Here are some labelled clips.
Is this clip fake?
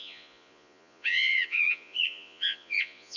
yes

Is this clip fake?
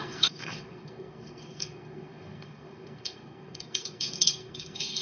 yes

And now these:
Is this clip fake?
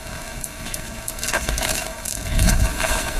yes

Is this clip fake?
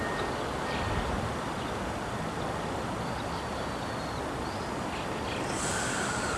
no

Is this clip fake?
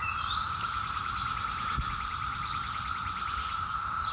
yes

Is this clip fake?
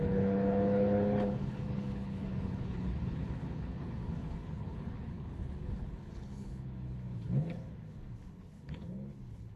yes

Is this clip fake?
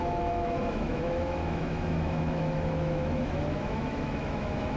yes